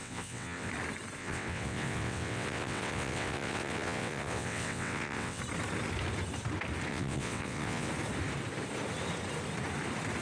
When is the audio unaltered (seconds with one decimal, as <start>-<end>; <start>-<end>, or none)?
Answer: 0.7-1.2; 5.4-6.9; 7.9-10.2